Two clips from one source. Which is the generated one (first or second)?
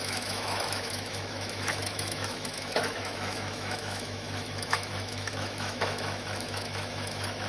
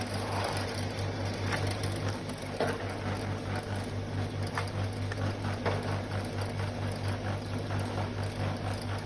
first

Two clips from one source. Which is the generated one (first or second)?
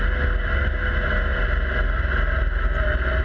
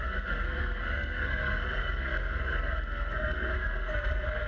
second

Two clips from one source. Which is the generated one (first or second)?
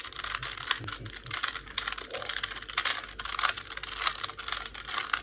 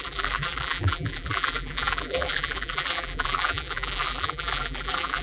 second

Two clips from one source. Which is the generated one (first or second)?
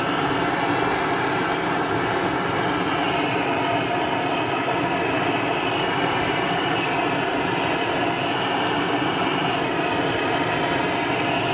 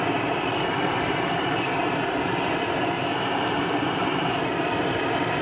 second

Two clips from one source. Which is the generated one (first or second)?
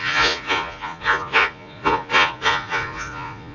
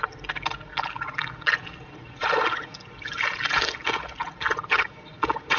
first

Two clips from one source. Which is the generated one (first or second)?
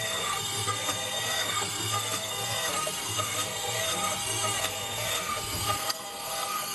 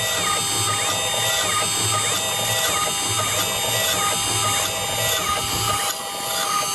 first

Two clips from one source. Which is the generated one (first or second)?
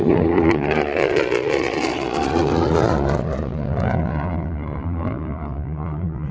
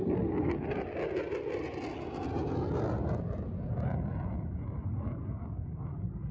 first